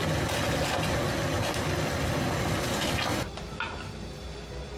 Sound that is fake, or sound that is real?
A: real